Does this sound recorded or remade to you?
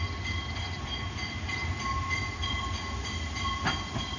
remade